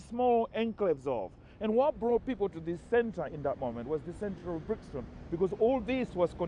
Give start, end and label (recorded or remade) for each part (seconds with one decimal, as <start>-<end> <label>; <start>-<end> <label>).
0.0-6.5 recorded